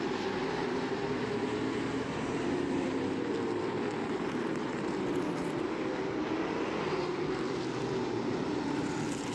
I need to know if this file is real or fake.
fake